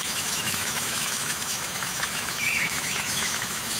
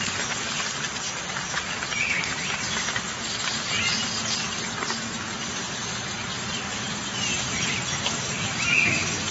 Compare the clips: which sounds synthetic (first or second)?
first